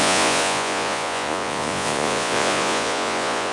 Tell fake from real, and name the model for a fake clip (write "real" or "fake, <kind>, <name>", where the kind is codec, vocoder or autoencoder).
fake, vocoder, Vocos